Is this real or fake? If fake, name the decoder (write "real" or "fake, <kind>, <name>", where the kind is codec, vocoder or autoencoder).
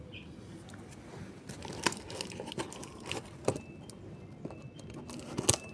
real